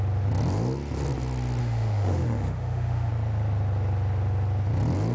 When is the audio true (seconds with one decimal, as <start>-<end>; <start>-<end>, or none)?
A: 0.0-1.6; 3.1-5.1

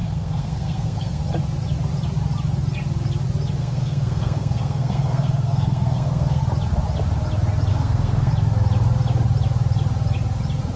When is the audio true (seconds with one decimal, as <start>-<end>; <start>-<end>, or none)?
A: 1.2-3.6; 6.4-7.7; 8.3-10.8

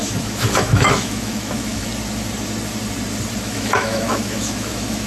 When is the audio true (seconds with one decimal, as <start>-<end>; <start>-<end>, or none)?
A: 1.9-3.4

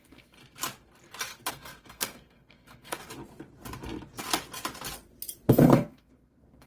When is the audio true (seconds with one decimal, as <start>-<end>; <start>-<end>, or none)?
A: 0.4-1.5; 3.0-5.5

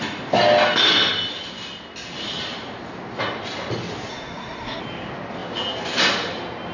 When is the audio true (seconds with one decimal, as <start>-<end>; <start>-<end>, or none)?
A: 0.0-4.1; 4.8-6.7

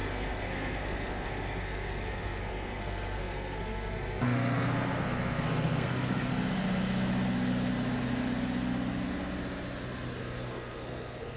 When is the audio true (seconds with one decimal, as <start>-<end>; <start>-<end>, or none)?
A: 6.3-10.2

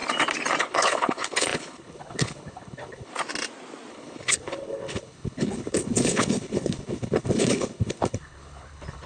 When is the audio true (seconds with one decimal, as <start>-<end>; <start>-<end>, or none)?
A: 0.0-0.6; 3.1-3.9

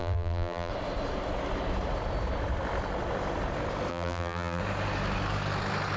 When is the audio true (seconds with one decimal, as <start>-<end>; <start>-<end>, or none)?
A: 0.7-3.9; 4.6-6.0